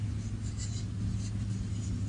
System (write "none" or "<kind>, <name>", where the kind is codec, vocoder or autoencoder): none